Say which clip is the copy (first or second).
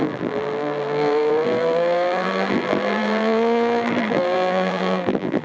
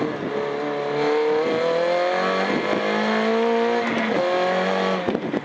first